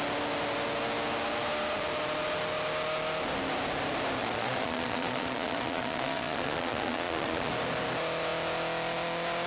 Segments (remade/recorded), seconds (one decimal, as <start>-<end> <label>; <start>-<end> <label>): 0.0-4.2 recorded; 4.2-7.5 remade; 7.5-9.5 recorded